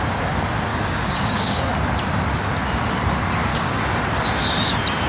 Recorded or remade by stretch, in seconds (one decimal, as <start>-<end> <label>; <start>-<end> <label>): 0.0-0.7 recorded; 0.7-1.7 remade; 1.7-3.5 recorded; 3.5-4.0 remade; 4.0-5.1 recorded